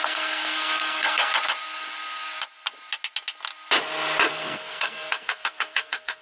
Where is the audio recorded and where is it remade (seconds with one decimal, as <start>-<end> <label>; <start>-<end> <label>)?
0.0-1.3 remade; 1.3-4.3 recorded; 4.3-6.2 remade